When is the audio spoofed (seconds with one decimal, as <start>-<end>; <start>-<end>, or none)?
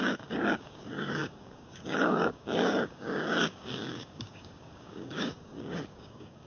0.0-6.5